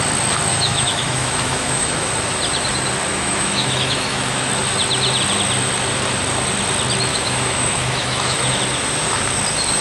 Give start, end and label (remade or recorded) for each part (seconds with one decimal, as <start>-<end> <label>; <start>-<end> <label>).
0.0-0.5 recorded; 0.5-2.1 remade; 2.1-3.1 recorded; 3.1-4.5 remade; 4.5-7.1 recorded; 7.1-8.6 remade; 8.6-9.8 recorded